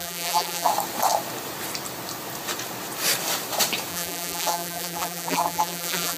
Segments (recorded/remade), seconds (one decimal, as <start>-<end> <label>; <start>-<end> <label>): 0.0-0.7 remade; 0.7-3.9 recorded; 3.9-6.2 remade